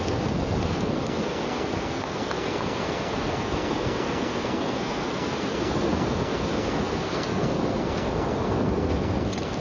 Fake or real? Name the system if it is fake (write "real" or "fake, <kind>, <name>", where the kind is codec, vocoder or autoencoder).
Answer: fake, codec, SNAC